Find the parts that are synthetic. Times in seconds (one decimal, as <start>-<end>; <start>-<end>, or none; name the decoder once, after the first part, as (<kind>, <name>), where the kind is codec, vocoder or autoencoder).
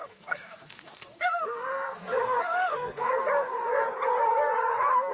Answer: 0.0-3.1 (codec, SNAC)